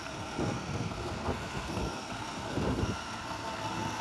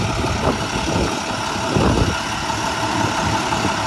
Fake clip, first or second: first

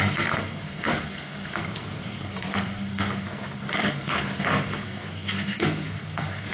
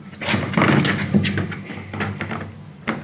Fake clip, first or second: first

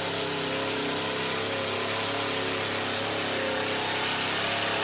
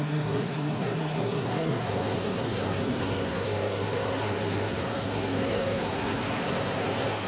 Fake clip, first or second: second